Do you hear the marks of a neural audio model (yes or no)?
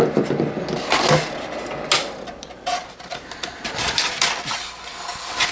no